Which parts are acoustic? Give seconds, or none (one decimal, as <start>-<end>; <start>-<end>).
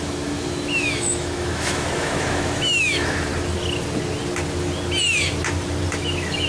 3.3-5.9